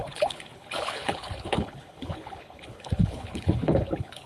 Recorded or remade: remade